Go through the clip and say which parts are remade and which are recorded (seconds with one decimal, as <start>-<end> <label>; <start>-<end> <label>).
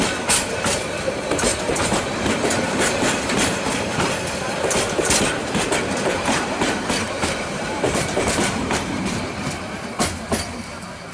0.0-1.5 recorded; 1.5-2.0 remade; 2.0-6.1 recorded; 6.1-9.2 remade; 9.2-11.1 recorded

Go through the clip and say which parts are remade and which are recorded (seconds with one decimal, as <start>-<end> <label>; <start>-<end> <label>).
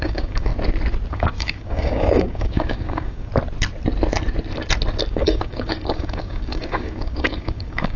0.0-0.5 remade; 0.5-1.1 recorded; 1.1-3.3 remade; 3.3-5.1 recorded; 5.1-8.0 remade